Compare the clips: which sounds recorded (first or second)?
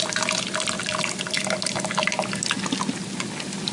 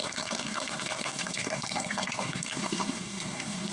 first